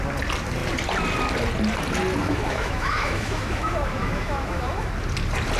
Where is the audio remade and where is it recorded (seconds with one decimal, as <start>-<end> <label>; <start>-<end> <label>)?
0.0-2.2 recorded; 2.2-4.9 remade; 4.9-5.6 recorded